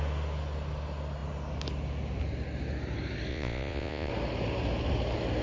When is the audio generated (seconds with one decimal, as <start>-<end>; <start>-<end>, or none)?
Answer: 3.3-4.1